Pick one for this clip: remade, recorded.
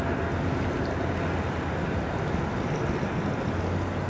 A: recorded